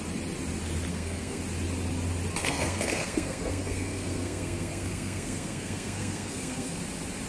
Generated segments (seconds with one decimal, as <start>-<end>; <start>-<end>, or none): 0.9-1.4; 2.4-6.8